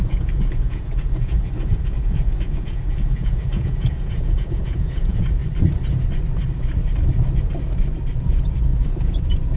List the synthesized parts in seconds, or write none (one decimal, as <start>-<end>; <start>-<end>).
0.0-5.4; 8.2-9.6